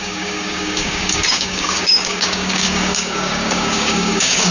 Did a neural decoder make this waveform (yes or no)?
yes